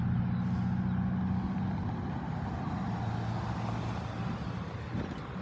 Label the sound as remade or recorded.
recorded